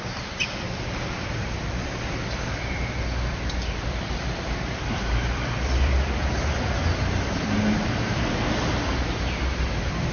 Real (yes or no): no